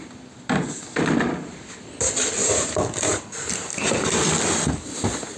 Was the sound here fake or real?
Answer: real